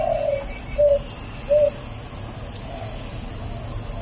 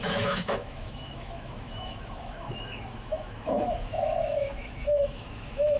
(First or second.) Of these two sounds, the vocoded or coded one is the second